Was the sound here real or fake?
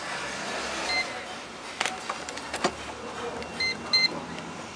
real